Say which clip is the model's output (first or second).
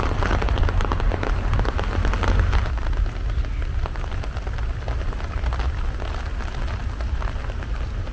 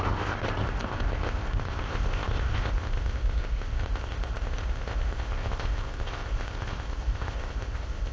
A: second